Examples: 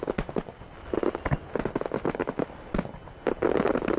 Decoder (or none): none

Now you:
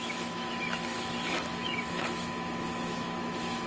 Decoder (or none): autoencoder, DAC-VAE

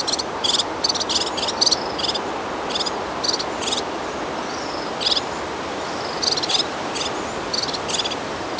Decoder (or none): none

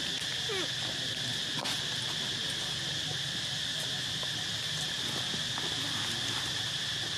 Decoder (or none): none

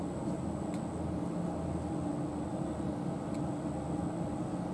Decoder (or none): none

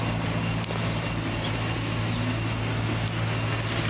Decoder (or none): none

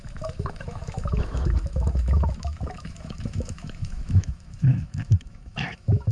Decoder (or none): autoencoder, DAC-VAE